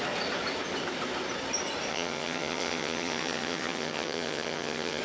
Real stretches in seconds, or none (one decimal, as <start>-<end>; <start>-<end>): 0.0-1.9

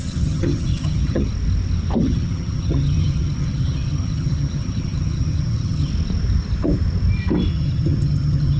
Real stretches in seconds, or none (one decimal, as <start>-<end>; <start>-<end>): 1.3-2.0; 5.9-7.5

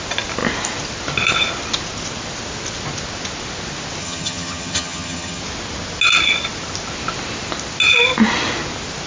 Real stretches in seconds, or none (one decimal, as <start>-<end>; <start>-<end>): 0.0-4.0; 5.4-9.1

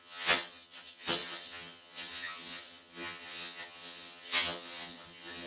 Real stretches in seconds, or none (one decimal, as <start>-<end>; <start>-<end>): none

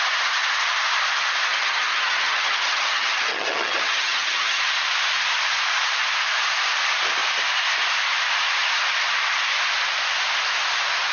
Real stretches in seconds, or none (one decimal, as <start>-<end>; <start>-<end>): 0.0-1.5; 4.6-11.1

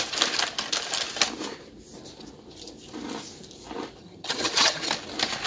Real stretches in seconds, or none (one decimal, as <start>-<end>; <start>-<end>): 0.0-4.0; 4.9-5.5